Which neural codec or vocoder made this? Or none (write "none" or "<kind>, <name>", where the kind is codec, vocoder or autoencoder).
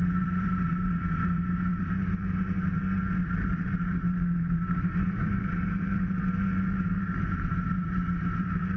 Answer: vocoder, BigVGAN v2